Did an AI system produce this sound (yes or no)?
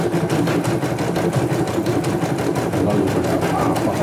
yes